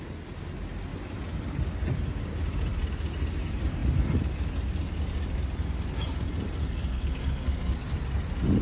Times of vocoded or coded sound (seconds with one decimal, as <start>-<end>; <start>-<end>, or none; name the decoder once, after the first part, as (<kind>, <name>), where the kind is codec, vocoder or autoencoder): 6.6-7.7 (codec, SNAC)